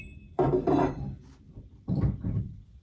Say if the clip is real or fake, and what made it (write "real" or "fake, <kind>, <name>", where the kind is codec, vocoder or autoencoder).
fake, vocoder, BigVGAN v2